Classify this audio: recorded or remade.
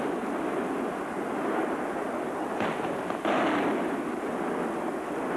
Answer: recorded